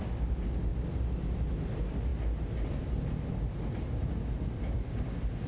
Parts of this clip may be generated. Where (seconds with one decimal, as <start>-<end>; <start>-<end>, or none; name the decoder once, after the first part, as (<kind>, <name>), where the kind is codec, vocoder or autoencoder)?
none